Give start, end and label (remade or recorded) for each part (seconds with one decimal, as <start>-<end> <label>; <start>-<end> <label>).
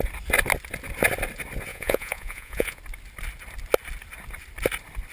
0.0-1.7 recorded; 1.7-2.8 remade; 2.8-5.1 recorded